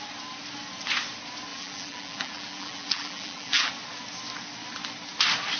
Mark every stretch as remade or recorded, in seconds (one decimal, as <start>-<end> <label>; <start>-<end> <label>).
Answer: 0.0-1.5 recorded; 1.5-3.7 remade; 3.7-5.6 recorded